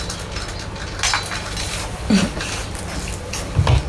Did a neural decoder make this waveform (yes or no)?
no